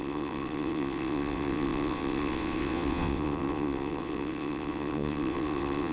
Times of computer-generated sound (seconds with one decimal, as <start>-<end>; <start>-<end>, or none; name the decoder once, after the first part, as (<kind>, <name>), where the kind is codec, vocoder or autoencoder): 0.0-5.9 (vocoder, WaveNeXt)